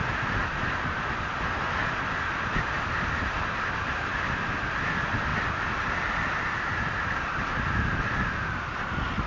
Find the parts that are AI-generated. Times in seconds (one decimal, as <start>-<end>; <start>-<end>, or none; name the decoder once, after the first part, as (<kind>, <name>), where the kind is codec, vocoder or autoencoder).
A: none